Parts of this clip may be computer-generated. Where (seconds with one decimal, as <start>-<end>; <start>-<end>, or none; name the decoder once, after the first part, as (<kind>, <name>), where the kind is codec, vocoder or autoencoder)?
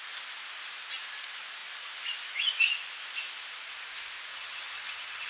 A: 4.3-5.3 (vocoder, HiFi-GAN)